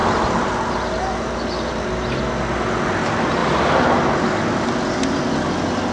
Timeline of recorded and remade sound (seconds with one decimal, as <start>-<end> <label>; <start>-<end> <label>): 0.0-1.9 remade; 1.9-5.9 recorded

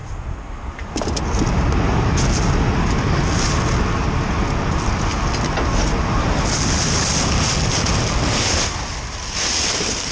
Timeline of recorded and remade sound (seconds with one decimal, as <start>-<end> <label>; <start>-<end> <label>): 0.0-10.1 recorded

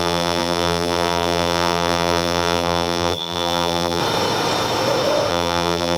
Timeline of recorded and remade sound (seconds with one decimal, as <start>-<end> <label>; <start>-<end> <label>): 0.0-4.0 remade; 4.0-5.3 recorded; 5.3-6.0 remade

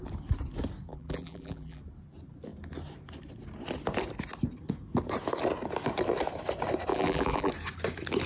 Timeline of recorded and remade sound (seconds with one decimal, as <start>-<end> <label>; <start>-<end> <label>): 0.0-0.9 recorded; 0.9-1.8 remade; 1.8-6.9 recorded; 6.9-7.5 remade; 7.5-8.3 recorded

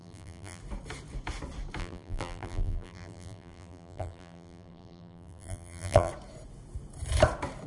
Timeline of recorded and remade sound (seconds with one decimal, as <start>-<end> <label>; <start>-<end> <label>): 0.0-0.6 remade; 0.6-1.8 recorded; 1.8-6.1 remade; 6.1-7.7 recorded

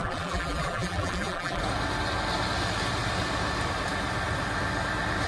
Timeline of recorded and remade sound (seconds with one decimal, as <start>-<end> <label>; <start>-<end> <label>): 0.0-1.6 remade; 1.6-5.3 recorded

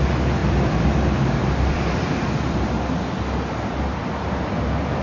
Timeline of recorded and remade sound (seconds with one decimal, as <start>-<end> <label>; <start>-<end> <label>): 0.0-0.4 recorded; 0.4-2.7 remade; 2.7-4.0 recorded; 4.0-5.0 remade

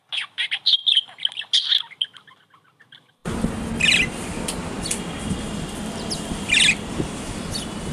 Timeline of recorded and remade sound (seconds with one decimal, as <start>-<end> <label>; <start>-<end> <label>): 0.0-7.9 recorded